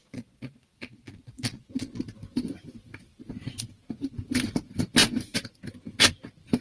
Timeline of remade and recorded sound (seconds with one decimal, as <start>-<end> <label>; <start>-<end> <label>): 0.0-2.0 remade; 2.0-6.6 recorded